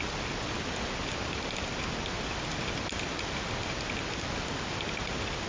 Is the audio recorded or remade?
recorded